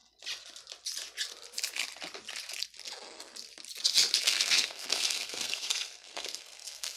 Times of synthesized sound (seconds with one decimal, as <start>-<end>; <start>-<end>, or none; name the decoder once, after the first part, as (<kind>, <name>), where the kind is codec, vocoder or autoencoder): 4.2-7.0 (codec, SNAC)